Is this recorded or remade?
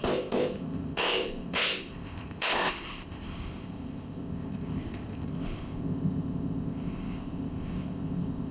remade